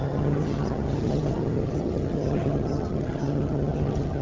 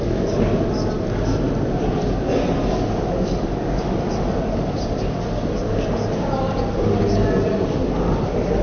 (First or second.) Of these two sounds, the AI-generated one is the first